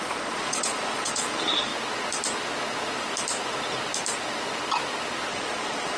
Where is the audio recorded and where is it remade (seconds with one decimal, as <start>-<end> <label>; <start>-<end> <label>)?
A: 0.0-1.7 remade; 1.7-5.3 recorded; 5.3-6.0 remade